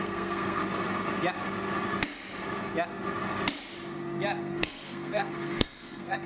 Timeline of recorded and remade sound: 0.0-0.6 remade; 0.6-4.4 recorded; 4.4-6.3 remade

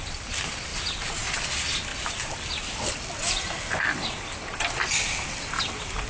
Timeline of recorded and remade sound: 0.0-1.9 recorded; 1.9-5.6 remade; 5.6-6.1 recorded

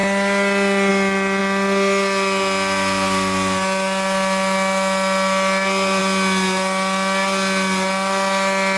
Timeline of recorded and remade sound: 0.0-8.8 recorded

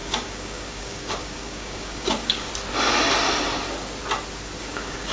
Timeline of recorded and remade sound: 0.0-2.5 remade; 2.5-4.6 recorded; 4.6-5.1 remade

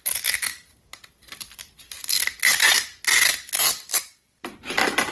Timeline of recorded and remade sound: 0.0-5.1 recorded